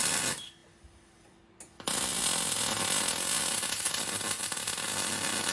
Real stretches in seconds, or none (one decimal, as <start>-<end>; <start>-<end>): 0.0-5.5